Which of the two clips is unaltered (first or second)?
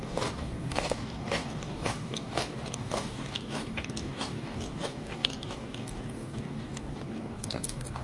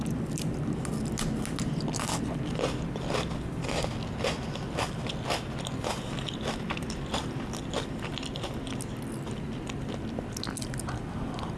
second